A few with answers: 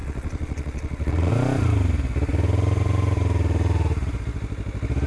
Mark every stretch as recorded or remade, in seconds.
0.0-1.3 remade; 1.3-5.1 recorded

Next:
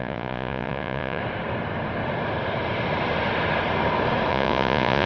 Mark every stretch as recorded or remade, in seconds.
0.0-1.2 remade; 1.2-4.3 recorded; 4.3-5.1 remade

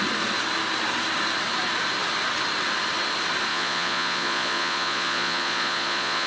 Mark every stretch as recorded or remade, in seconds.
0.0-3.5 recorded; 3.5-6.3 remade